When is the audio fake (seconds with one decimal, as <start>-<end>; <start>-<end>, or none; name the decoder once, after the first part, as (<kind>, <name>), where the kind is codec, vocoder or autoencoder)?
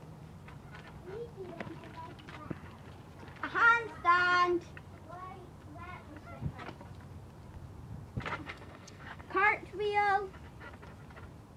8.4-9.2 (codec, SNAC)